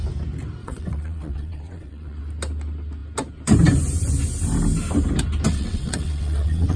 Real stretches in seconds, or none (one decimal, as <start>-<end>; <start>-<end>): 0.0-0.6; 2.2-5.5